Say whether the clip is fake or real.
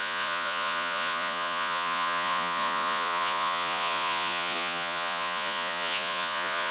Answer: fake